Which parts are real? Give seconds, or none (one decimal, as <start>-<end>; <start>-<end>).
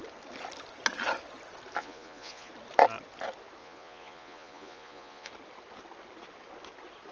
0.0-1.8; 2.5-3.6; 5.3-7.1